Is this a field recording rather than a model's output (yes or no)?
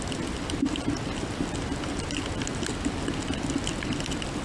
yes